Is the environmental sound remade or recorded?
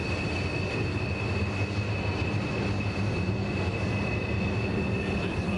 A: recorded